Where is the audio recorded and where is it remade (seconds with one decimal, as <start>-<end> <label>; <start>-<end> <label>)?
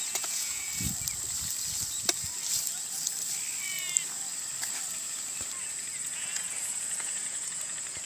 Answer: 0.0-0.7 remade; 0.7-5.6 recorded; 5.6-8.1 remade